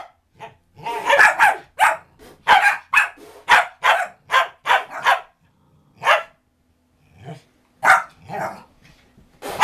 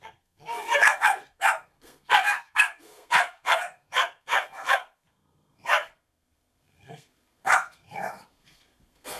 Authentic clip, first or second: first